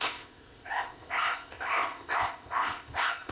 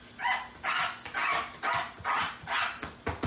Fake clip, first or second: first